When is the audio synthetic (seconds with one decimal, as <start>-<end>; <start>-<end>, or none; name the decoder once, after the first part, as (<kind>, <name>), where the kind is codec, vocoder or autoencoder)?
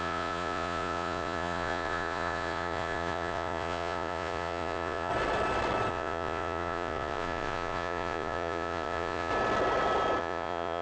0.0-5.1 (vocoder, Vocos); 5.9-9.3; 10.2-10.8